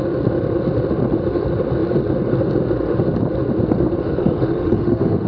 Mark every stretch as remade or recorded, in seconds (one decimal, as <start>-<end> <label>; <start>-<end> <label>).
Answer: 0.0-4.0 recorded; 4.0-5.3 remade